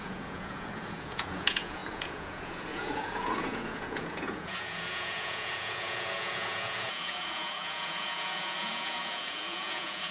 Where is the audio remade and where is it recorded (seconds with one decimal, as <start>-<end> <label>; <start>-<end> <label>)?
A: 0.0-10.1 remade